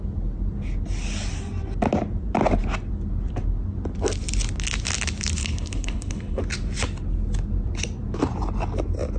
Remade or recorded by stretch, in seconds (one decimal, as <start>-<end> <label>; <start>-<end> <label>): 0.0-5.4 recorded; 5.4-6.4 remade; 6.4-9.2 recorded